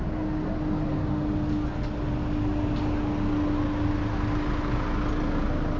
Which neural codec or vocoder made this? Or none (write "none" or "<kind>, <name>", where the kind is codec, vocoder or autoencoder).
none